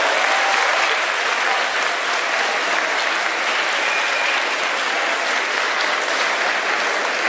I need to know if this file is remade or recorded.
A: recorded